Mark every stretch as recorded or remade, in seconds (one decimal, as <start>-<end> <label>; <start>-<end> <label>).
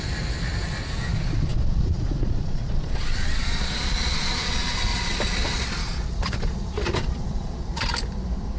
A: 0.0-1.5 recorded; 1.5-4.5 remade; 4.5-4.9 recorded; 4.9-7.9 remade; 7.9-8.6 recorded